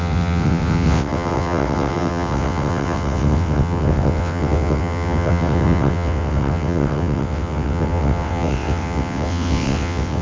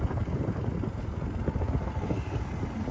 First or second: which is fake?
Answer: first